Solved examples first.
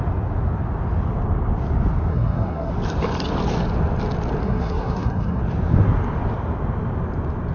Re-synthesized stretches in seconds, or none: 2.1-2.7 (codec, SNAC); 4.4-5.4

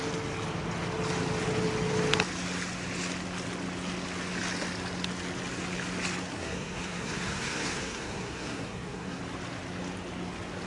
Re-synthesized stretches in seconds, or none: 6.3-9.2 (codec, SNAC)

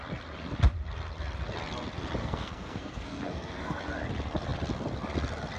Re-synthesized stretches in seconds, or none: 2.2-3.8 (codec, SNAC)

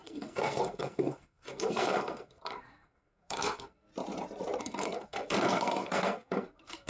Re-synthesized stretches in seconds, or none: 0.0-3.9 (codec, SNAC); 4.6-6.9

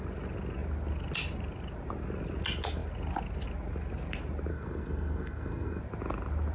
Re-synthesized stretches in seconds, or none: 4.5-5.8 (codec, SNAC)